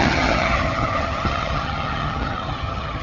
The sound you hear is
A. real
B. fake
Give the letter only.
B